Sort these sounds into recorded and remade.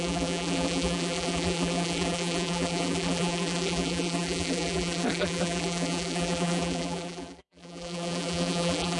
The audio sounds remade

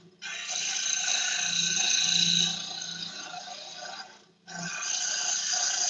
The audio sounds recorded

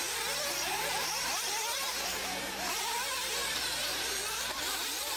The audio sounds remade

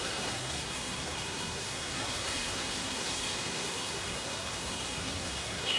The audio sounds remade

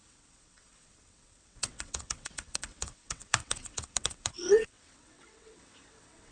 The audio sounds remade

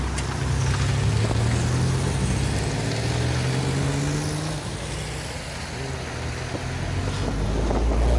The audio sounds recorded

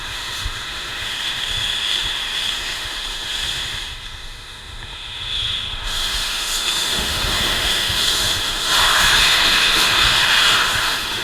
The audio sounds remade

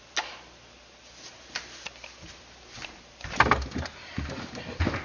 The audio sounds recorded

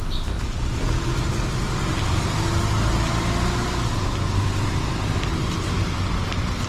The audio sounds recorded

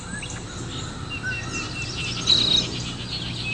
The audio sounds recorded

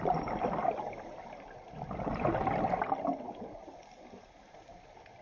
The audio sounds recorded